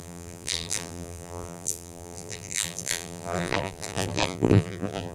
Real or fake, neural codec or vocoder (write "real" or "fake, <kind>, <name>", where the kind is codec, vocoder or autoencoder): fake, vocoder, BigVGAN v2